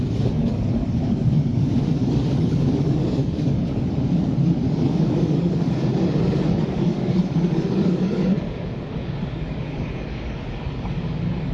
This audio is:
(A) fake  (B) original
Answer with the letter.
A